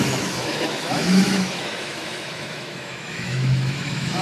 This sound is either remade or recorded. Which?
remade